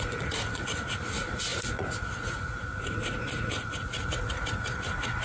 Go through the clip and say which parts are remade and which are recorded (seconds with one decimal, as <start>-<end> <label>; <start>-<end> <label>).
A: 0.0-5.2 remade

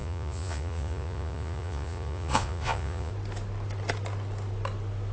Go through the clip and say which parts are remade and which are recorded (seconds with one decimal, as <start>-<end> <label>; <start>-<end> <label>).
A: 0.0-3.1 remade; 3.1-5.1 recorded

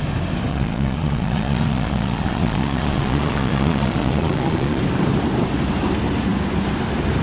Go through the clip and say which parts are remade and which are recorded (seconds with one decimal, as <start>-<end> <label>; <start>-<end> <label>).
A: 0.0-0.5 recorded; 0.5-4.8 remade; 4.8-7.2 recorded

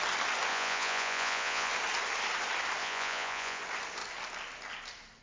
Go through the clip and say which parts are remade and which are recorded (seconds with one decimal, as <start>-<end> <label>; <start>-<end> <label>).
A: 0.0-0.5 recorded; 0.5-1.7 remade; 1.7-2.8 recorded; 2.8-3.6 remade; 3.6-5.2 recorded